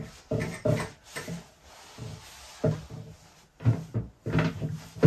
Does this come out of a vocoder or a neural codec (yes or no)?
no